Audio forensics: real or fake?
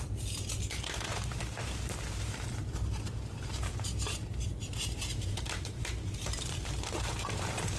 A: fake